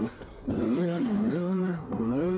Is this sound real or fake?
fake